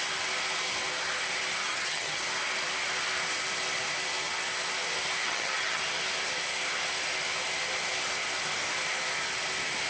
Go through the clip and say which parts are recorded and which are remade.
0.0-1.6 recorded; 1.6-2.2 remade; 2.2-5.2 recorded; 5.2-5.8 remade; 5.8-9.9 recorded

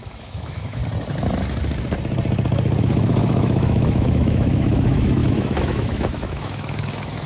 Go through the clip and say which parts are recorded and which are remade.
0.0-0.8 remade; 0.8-2.8 recorded; 2.8-7.3 remade

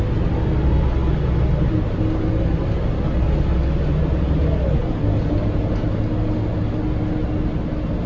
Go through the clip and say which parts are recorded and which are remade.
0.0-8.1 recorded

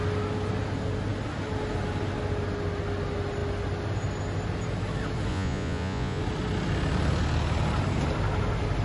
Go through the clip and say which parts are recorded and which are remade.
0.0-5.3 recorded; 5.3-6.2 remade; 6.2-8.8 recorded

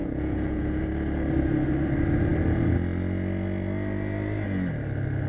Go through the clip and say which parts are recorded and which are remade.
0.0-0.8 remade; 0.8-5.3 recorded

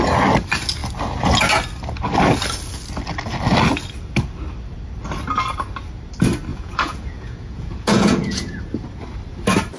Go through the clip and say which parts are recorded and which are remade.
0.0-6.5 recorded; 6.5-8.6 remade; 8.6-9.8 recorded